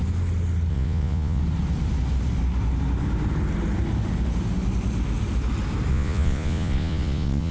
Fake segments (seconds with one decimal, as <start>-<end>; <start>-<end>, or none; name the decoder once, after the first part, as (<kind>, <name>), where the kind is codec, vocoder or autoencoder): 0.7-1.4 (vocoder, Vocos); 5.9-7.5